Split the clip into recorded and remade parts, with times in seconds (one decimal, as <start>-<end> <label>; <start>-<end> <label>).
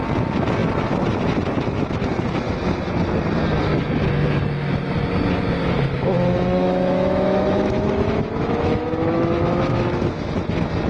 0.0-5.6 recorded; 5.6-10.3 remade; 10.3-10.9 recorded